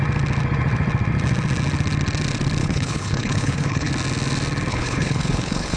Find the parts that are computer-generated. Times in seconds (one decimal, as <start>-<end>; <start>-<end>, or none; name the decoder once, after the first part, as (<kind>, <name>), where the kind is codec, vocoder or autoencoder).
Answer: 2.6-3.9 (codec, HILCodec); 4.7-5.8